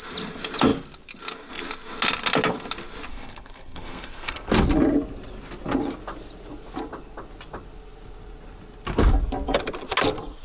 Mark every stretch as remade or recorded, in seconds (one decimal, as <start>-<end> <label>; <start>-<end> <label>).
0.0-3.1 recorded; 3.1-4.5 remade; 4.5-10.4 recorded